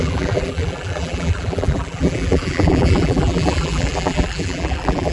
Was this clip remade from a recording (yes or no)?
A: yes